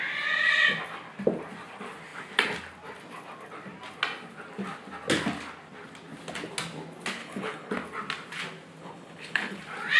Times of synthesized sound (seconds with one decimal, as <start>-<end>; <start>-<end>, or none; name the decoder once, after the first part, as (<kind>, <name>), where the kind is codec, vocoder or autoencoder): 7.2-7.7 (codec, HILCodec); 8.8-9.6